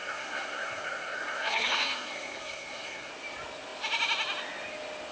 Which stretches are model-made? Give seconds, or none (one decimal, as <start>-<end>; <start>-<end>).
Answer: 0.0-3.1